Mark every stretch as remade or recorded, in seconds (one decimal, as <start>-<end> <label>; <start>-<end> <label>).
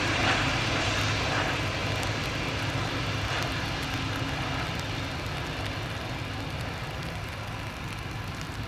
0.0-8.7 recorded